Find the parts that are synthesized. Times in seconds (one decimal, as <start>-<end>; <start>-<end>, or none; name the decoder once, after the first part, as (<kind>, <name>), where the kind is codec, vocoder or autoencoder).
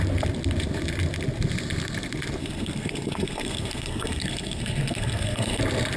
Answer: 2.4-5.6 (codec, SNAC)